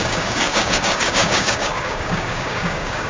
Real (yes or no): no